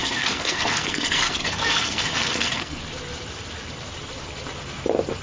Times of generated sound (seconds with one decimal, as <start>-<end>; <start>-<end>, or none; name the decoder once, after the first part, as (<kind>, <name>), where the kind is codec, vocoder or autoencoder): 0.0-2.8 (codec, SNAC)